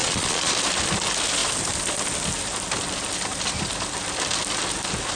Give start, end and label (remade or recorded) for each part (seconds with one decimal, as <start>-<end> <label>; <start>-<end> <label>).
0.0-0.5 remade; 0.5-5.2 recorded